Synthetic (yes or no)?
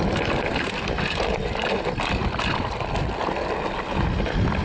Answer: no